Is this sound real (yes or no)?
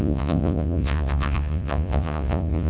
no